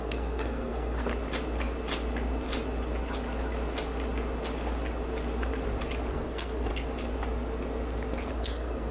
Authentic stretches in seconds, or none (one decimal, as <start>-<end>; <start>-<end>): 1.1-6.1; 6.7-8.3